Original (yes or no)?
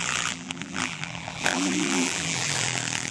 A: no